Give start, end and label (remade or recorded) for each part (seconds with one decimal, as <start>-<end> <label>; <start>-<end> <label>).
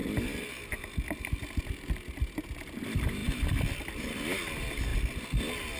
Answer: 0.0-3.2 recorded; 3.2-4.0 remade; 4.0-5.8 recorded